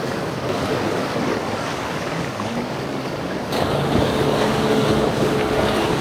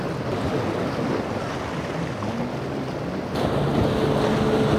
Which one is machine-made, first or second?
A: first